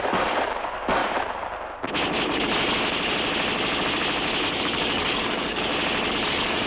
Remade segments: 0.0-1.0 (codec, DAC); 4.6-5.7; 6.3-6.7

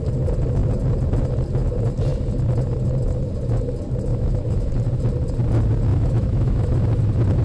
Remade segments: 4.1-4.7 (autoencoder, DAC-VAE); 5.9-7.0

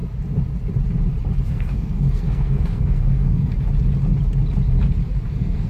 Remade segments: 1.5-3.5 (codec, SNAC); 5.3-5.7

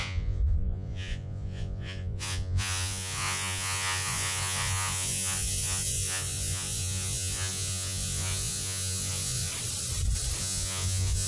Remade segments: 0.0-9.5 (vocoder, Vocos); 10.4-11.3

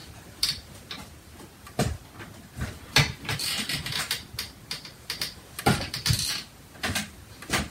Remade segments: none

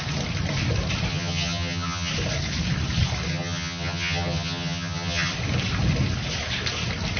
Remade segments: 1.1-2.1 (vocoder, HiFi-GAN); 3.3-5.3